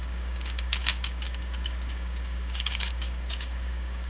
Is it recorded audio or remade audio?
remade